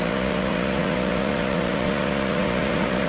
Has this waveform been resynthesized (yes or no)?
yes